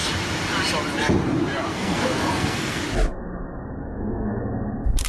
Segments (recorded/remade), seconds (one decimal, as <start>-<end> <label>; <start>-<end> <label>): 0.0-1.7 recorded; 1.7-2.8 remade; 2.8-3.8 recorded; 3.8-4.4 remade; 4.4-5.1 recorded